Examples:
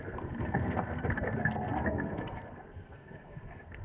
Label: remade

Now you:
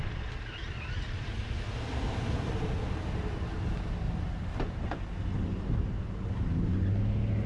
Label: recorded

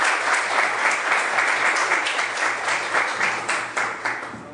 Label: recorded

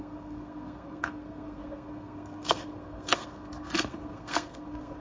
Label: remade